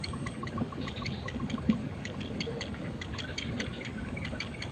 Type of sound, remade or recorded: remade